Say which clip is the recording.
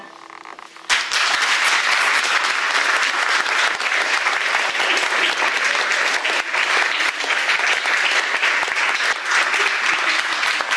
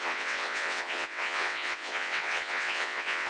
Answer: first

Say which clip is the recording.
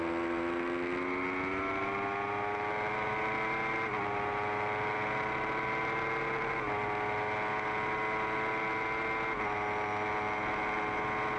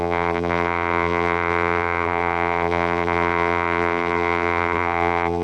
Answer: first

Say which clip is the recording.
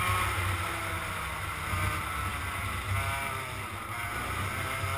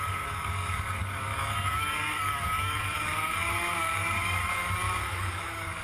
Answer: first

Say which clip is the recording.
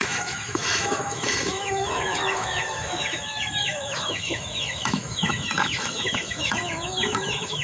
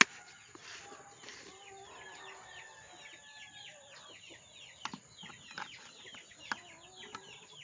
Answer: second